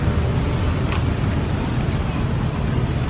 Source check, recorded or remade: recorded